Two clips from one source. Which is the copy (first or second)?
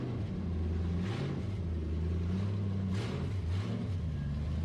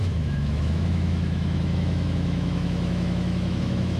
second